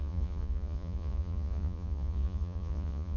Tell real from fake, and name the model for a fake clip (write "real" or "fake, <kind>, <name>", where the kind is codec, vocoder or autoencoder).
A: fake, vocoder, Vocos